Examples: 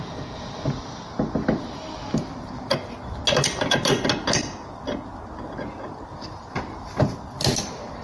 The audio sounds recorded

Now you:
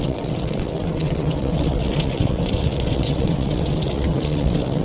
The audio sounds remade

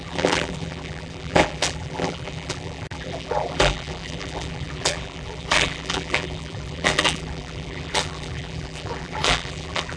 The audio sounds remade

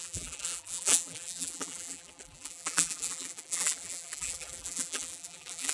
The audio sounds remade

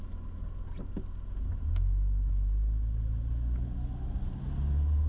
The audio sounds recorded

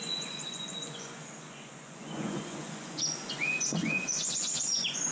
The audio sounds remade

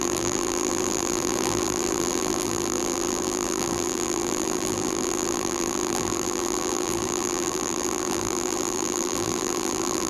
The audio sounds remade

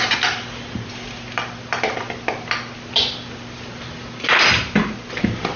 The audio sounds recorded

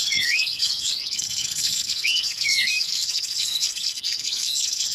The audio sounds remade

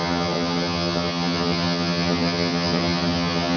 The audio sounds remade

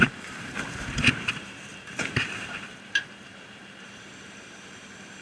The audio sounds remade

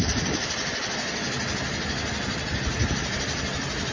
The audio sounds recorded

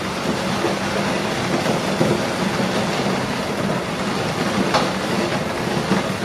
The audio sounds recorded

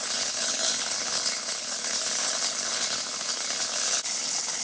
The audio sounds remade